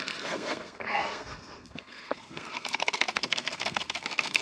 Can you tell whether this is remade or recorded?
remade